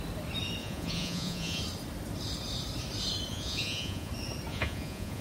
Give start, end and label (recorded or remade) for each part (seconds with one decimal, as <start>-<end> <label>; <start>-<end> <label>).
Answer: 0.0-0.6 recorded; 0.6-1.6 remade; 1.6-3.3 recorded; 3.3-4.1 remade; 4.1-4.5 recorded; 4.5-5.2 remade